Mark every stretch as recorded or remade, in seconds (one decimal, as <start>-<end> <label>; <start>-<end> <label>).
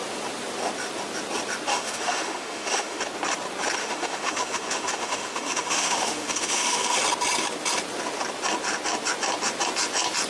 0.0-1.7 recorded; 1.7-3.0 remade; 3.0-3.8 recorded; 3.8-7.0 remade; 7.0-10.3 recorded